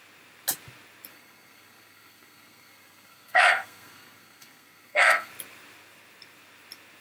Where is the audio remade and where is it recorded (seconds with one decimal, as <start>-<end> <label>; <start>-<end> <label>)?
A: 0.0-1.1 recorded; 1.1-5.3 remade; 5.3-7.0 recorded